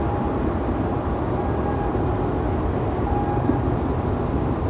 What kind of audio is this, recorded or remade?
recorded